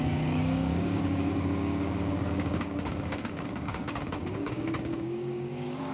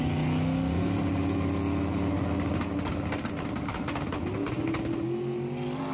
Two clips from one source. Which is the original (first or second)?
second